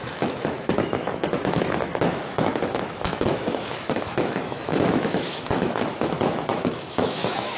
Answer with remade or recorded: remade